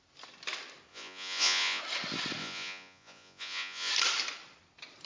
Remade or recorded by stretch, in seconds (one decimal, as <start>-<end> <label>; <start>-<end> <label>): 0.0-0.9 recorded; 0.9-1.8 remade; 1.8-2.4 recorded; 2.4-3.9 remade; 3.9-5.0 recorded